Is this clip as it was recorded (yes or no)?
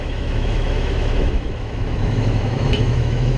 no